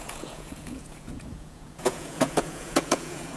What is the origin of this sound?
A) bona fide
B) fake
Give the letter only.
B